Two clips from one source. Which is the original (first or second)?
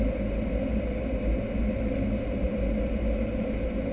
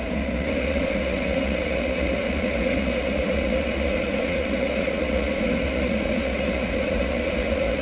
first